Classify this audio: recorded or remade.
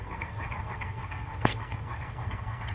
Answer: remade